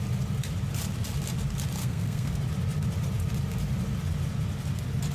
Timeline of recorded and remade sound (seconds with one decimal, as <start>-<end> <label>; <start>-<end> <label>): 0.0-1.8 recorded; 1.8-2.4 remade; 2.4-5.1 recorded

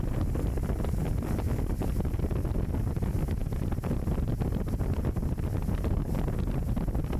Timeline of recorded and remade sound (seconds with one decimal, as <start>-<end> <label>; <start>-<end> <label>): 0.0-7.2 recorded

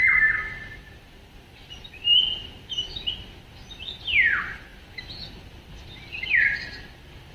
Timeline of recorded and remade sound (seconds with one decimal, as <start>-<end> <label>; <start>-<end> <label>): 0.0-7.3 recorded

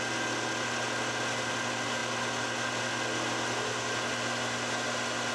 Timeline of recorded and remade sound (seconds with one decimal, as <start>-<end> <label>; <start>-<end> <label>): 0.0-5.3 recorded

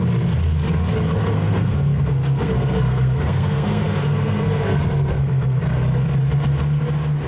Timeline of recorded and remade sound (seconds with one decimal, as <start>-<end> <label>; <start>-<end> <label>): 0.0-1.2 recorded; 1.2-5.6 remade; 5.6-7.3 recorded

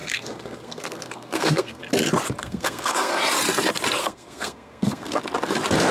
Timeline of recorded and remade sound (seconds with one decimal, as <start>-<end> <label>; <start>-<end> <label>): 0.0-1.8 remade; 1.8-2.4 recorded; 2.4-3.1 remade; 3.1-4.0 recorded; 4.0-5.2 remade; 5.2-5.9 recorded